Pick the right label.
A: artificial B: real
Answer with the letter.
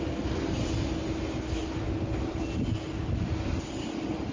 B